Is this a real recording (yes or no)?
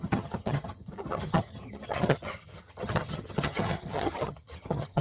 no